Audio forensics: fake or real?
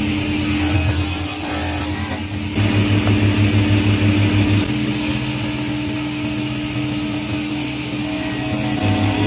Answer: real